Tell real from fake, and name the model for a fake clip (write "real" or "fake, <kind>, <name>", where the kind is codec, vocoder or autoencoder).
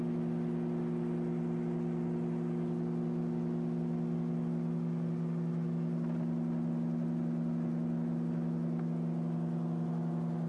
real